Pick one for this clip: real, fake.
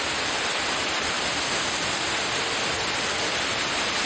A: real